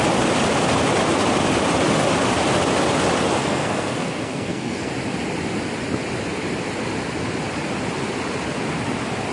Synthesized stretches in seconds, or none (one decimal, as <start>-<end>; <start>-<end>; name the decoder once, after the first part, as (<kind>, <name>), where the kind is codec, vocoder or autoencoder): 3.4-4.9 (codec, SNAC)